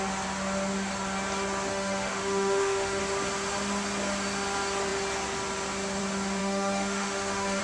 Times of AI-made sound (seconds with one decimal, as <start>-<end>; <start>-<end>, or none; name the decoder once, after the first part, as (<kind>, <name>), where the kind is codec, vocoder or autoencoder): 1.7-3.0 (autoencoder, DAC-VAE); 6.4-7.6